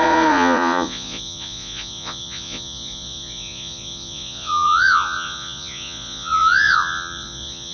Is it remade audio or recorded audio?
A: remade